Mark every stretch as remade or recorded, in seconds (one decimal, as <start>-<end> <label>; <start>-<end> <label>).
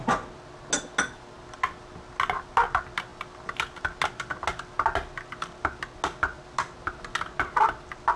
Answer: 0.0-8.2 recorded